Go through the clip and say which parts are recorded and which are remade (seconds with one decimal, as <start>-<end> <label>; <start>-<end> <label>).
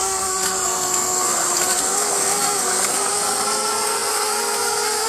0.0-5.1 remade